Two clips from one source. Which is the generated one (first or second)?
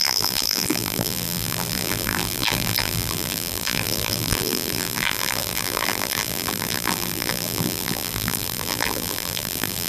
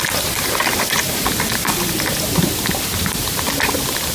first